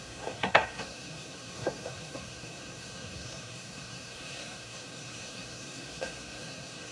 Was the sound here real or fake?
fake